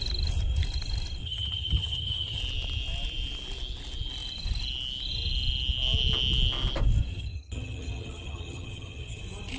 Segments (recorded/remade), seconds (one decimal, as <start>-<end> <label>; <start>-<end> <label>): 0.0-1.2 recorded; 1.2-2.4 remade; 2.4-7.1 recorded; 7.1-9.2 remade; 9.2-9.6 recorded